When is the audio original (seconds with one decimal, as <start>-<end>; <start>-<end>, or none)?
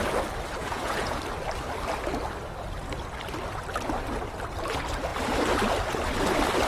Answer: 0.0-0.6; 1.2-6.7